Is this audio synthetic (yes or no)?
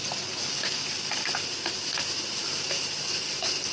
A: no